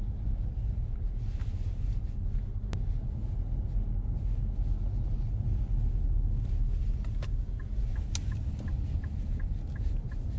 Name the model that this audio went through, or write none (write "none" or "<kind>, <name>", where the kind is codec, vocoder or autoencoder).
none